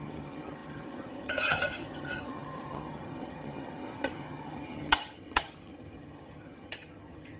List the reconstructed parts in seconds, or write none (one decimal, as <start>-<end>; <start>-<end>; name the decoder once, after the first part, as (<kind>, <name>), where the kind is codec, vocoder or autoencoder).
0.0-7.4 (vocoder, HiFi-GAN)